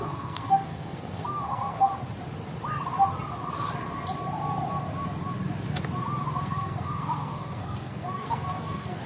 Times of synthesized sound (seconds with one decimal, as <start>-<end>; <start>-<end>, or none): 0.0-1.9; 6.4-9.1